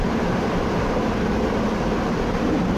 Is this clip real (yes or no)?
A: no